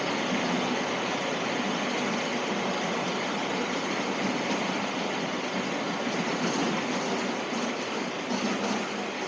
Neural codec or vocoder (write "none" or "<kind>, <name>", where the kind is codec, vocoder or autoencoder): none